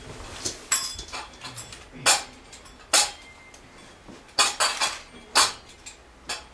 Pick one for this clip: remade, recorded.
recorded